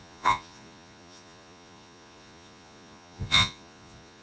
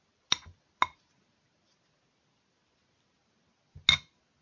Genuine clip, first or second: second